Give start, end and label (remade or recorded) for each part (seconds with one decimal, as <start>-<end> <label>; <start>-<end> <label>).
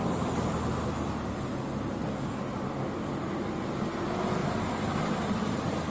0.0-4.4 recorded; 4.4-5.9 remade